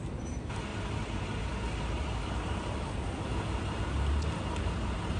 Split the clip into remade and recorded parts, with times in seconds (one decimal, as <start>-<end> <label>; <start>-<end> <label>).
0.0-5.2 recorded